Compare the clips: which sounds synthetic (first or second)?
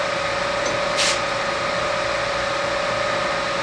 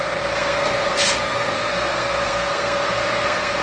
second